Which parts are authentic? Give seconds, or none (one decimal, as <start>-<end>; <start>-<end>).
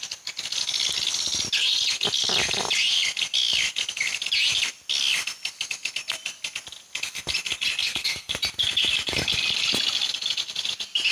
0.0-7.8; 8.3-11.1